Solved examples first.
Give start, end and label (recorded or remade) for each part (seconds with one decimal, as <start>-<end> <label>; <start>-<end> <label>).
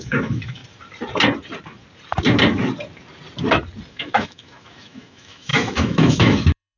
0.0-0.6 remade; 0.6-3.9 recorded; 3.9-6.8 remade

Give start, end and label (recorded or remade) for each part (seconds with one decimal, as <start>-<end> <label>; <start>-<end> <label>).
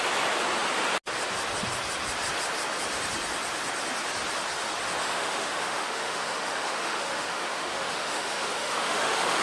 0.0-5.0 recorded; 5.0-9.4 remade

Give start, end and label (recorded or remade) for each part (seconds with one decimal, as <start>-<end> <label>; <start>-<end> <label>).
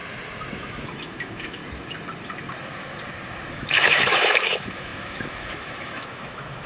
0.0-0.6 recorded; 0.6-1.6 remade; 1.6-3.5 recorded; 3.5-6.7 remade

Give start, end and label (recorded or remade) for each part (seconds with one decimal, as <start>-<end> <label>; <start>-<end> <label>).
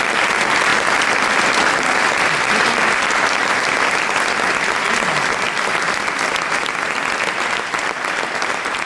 0.0-8.9 recorded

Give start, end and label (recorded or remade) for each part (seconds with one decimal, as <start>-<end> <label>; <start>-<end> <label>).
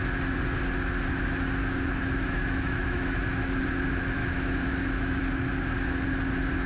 0.0-1.6 recorded; 1.6-3.6 remade; 3.6-4.2 recorded; 4.2-5.2 remade; 5.2-6.7 recorded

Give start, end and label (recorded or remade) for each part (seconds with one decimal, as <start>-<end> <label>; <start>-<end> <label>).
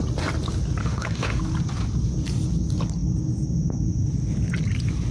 0.0-0.8 recorded; 0.8-1.4 remade; 1.4-5.1 recorded